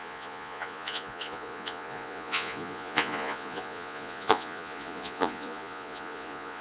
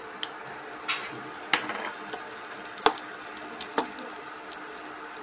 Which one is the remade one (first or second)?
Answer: first